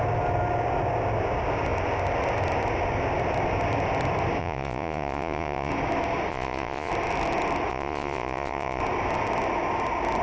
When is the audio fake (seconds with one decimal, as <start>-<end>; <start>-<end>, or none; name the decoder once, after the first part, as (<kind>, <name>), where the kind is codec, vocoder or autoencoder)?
4.4-5.7 (vocoder, Vocos); 6.3-6.9; 7.7-8.8